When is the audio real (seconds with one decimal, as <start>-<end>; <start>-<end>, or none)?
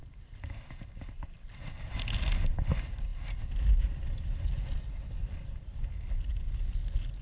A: 0.0-7.2